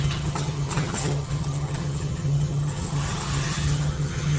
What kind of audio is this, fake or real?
fake